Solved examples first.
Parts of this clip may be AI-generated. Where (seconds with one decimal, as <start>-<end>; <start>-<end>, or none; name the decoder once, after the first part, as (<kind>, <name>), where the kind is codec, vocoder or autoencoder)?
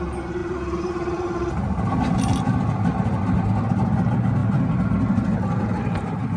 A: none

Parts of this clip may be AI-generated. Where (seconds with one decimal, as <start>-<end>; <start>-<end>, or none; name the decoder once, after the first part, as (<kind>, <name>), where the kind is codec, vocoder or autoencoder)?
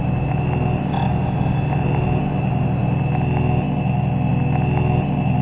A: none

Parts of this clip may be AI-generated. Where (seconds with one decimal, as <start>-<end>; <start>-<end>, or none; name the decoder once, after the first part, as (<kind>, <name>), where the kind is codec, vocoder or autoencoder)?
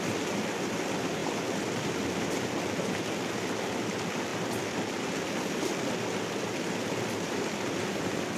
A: none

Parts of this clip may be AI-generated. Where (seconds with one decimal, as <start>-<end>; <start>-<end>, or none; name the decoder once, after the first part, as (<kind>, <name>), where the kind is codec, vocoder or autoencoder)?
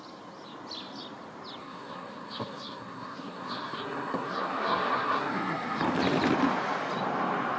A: 1.6-5.8 (codec, SNAC)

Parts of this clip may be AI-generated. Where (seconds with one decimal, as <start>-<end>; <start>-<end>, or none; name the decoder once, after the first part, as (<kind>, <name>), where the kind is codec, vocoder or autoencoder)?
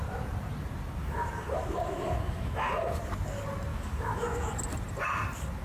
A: 1.0-3.0 (autoencoder, DAC-VAE); 3.7-4.5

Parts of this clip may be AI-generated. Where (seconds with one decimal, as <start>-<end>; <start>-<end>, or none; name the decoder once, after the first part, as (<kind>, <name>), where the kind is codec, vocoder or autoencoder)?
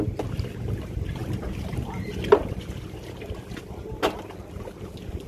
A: none